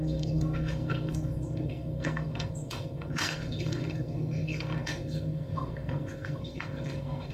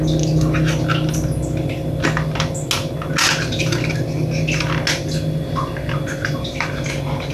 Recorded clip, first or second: second